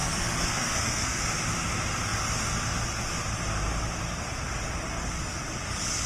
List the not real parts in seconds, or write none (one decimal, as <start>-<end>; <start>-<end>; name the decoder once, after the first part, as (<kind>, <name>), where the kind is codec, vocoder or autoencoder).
0.0-1.2 (codec, SNAC)